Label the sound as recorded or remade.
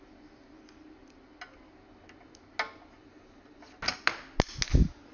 recorded